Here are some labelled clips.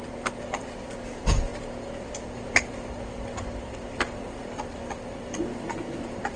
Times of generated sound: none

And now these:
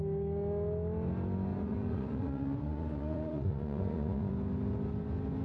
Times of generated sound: 1.5-4.3

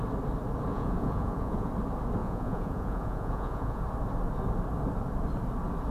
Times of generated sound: 0.7-1.7; 2.2-3.8

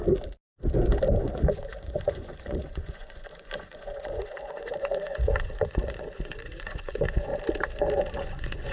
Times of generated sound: 1.2-7.3; 8.2-8.7

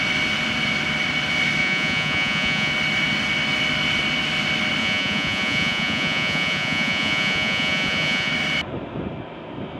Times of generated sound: 1.6-2.7; 4.8-8.3

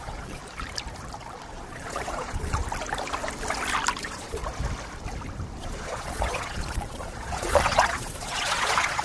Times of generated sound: 0.0-0.4; 1.5-2.6; 4.0-4.4; 5.6-9.0